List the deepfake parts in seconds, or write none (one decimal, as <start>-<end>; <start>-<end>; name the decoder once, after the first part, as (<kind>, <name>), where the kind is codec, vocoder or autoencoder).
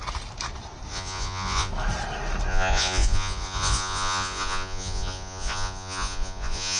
0.9-1.7 (vocoder, Vocos); 2.5-6.8